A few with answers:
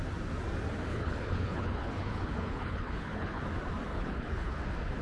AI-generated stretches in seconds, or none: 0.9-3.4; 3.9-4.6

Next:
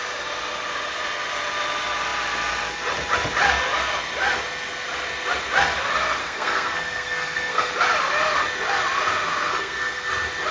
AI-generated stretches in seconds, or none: 6.2-7.7; 9.5-10.1